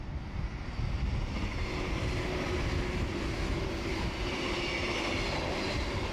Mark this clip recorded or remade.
recorded